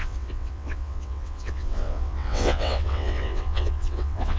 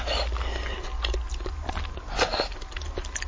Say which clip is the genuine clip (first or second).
second